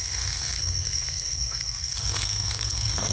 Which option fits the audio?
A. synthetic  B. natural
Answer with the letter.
A